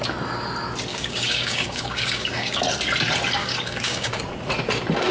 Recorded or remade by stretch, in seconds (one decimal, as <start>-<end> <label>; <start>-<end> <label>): 0.0-0.9 recorded; 0.9-2.6 remade; 2.6-3.4 recorded; 3.4-4.2 remade; 4.2-5.1 recorded